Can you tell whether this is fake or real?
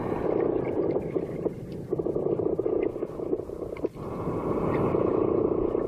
real